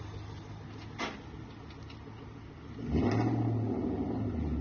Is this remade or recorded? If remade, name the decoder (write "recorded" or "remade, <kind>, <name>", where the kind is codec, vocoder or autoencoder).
recorded